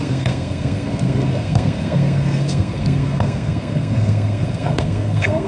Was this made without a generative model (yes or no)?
no